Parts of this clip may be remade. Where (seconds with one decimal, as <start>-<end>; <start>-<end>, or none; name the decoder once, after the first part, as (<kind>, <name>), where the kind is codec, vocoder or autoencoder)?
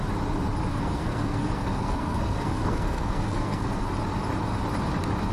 0.7-3.9 (codec, SNAC)